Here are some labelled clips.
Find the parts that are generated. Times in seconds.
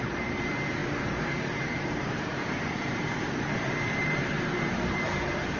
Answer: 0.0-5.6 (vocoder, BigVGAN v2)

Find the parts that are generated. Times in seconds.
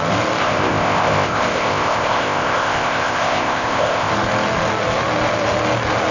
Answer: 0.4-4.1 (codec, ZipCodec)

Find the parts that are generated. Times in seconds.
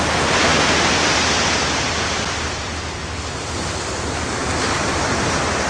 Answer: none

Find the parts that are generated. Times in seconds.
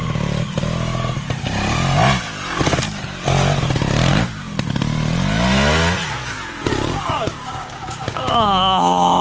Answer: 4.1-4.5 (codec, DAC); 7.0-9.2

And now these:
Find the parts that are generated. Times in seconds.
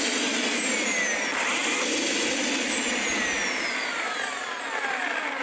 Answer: 0.0-5.4 (vocoder, BigVGAN v2)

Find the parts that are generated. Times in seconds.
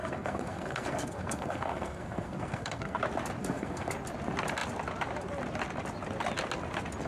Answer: 0.0-3.0 (codec, SNAC); 3.4-3.9